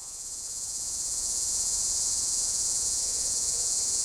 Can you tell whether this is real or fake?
fake